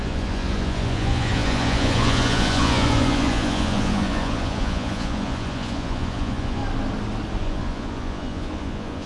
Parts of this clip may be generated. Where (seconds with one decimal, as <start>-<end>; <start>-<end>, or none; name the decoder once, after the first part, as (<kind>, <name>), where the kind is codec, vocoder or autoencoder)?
0.0-6.6 (vocoder, Vocos); 7.4-9.1